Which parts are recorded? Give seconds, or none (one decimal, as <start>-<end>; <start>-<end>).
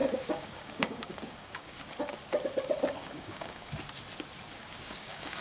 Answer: 1.9-3.0; 3.7-4.6